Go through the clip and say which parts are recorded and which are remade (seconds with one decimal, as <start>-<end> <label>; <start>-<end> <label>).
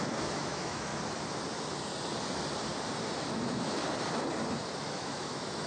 0.0-0.9 remade; 0.9-3.3 recorded; 3.3-3.8 remade; 3.8-4.9 recorded; 4.9-5.7 remade